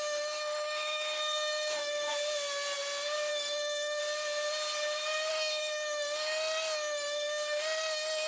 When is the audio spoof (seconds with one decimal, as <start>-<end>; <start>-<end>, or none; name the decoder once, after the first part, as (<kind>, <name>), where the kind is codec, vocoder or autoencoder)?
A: 0.0-2.1 (autoencoder, DAC-VAE); 3.3-4.0; 5.3-8.3